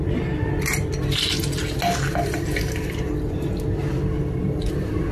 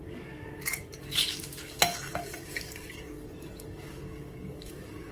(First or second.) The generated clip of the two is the second